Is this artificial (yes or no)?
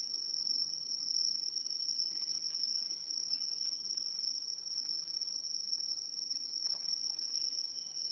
yes